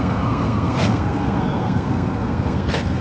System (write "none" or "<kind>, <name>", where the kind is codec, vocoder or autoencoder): codec, SNAC